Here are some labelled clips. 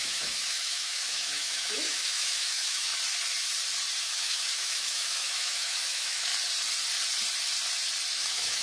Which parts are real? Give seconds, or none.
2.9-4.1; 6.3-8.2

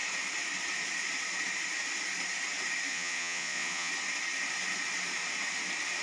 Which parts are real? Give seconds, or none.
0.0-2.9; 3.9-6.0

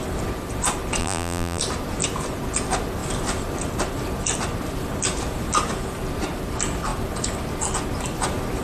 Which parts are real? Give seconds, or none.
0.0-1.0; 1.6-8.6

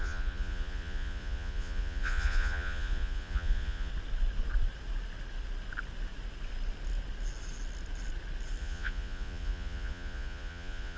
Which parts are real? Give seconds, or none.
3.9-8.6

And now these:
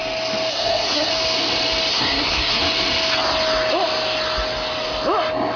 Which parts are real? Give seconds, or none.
0.0-0.5; 1.1-1.9; 2.6-5.6